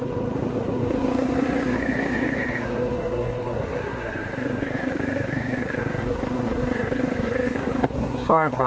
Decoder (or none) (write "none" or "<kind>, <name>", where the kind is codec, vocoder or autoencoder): codec, SNAC